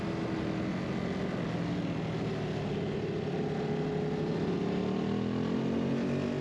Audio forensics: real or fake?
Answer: real